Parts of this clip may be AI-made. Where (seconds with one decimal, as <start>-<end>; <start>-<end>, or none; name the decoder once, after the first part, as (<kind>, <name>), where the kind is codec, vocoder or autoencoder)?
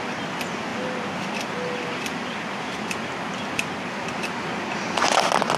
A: none